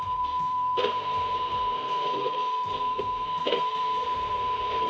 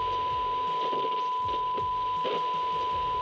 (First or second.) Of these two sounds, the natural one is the second